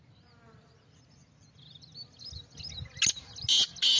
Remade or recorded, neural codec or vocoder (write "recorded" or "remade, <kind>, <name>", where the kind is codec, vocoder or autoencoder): recorded